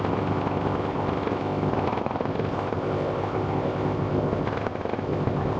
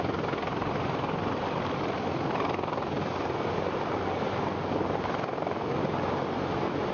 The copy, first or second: first